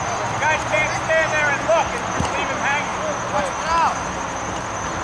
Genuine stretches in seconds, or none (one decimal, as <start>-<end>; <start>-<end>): 0.0-5.0